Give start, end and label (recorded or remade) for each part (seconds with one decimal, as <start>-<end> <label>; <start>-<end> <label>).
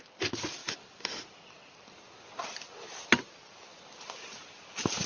0.0-5.1 recorded